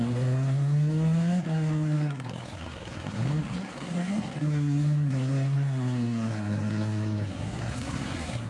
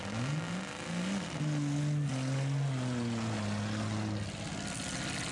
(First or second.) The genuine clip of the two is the second